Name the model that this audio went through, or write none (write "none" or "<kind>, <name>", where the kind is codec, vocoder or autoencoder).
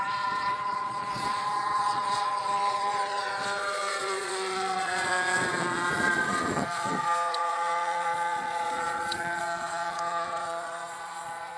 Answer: vocoder, Vocos